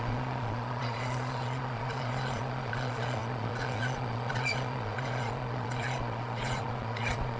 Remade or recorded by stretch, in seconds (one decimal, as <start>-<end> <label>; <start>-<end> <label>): 0.0-7.4 remade